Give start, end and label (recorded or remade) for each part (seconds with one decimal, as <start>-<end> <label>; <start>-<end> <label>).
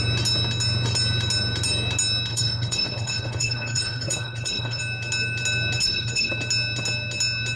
0.0-2.3 recorded; 2.3-4.8 remade; 4.8-5.8 recorded; 5.8-6.3 remade; 6.3-7.6 recorded